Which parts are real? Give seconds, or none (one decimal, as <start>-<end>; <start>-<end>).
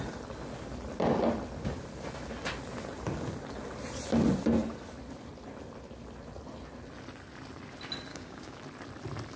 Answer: 0.0-8.1; 8.6-9.4